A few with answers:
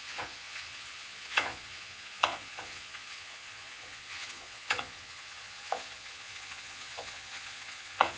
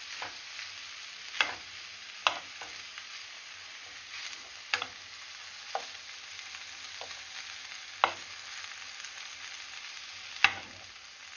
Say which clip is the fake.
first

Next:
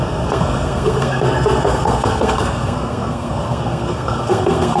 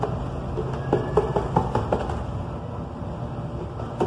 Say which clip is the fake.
first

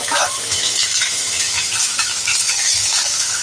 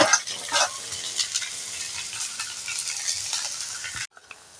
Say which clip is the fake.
first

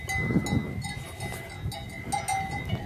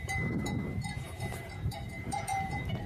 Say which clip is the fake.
second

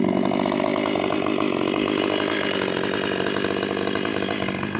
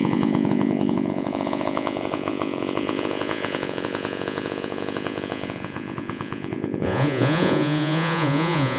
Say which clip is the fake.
second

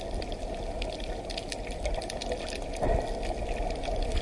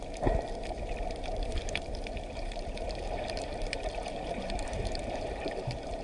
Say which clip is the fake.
second